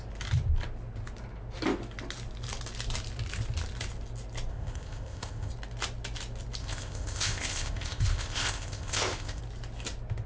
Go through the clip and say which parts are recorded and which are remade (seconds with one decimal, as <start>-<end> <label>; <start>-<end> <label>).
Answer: 0.0-4.5 recorded; 4.5-5.5 remade; 5.5-6.6 recorded; 6.6-9.4 remade; 9.4-10.3 recorded